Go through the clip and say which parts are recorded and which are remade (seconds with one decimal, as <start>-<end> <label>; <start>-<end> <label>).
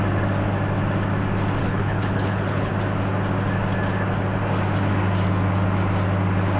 0.0-1.6 recorded; 1.6-2.7 remade; 2.7-6.6 recorded